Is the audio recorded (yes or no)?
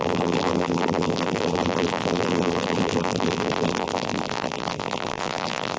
no